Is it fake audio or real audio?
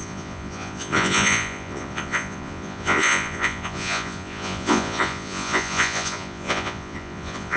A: fake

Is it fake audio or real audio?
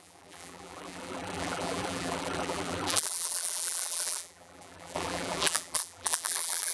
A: fake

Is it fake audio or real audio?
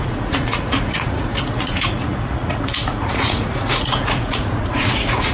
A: fake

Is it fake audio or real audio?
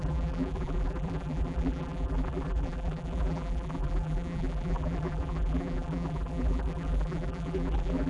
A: fake